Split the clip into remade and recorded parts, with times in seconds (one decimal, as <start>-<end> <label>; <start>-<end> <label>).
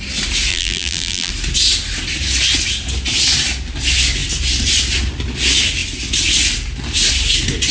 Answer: 0.0-0.5 recorded; 0.5-1.3 remade; 1.3-7.7 recorded